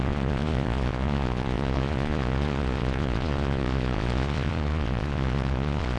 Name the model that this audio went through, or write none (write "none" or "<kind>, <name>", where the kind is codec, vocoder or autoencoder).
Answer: vocoder, Vocos